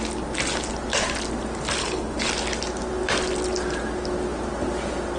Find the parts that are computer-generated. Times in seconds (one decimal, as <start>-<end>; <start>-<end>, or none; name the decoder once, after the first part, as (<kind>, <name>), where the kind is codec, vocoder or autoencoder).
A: 1.8-2.3 (codec, HILCodec)